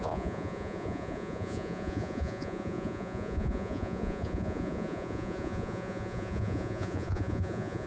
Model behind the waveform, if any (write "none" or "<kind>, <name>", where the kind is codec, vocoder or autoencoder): vocoder, Vocos